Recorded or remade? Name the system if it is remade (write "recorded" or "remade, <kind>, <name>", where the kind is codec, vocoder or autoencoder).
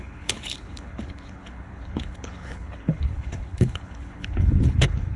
remade, codec, HILCodec